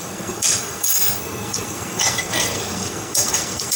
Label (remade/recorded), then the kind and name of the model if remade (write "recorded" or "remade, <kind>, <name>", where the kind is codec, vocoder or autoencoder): remade, codec, SNAC